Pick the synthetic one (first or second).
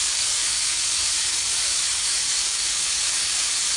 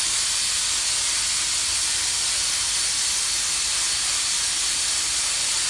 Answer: first